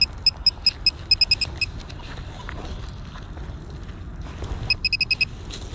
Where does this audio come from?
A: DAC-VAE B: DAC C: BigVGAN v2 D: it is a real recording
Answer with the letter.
D